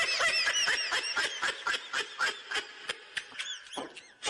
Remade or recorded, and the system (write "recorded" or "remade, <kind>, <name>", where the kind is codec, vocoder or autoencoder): recorded